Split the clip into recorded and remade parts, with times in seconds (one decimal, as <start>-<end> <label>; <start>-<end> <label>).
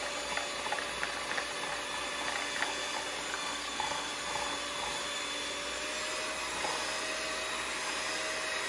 0.0-3.3 recorded; 3.3-4.1 remade; 4.1-8.7 recorded